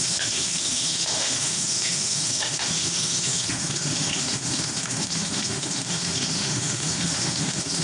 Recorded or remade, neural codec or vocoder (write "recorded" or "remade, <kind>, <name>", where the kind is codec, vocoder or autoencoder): remade, autoencoder, DAC-VAE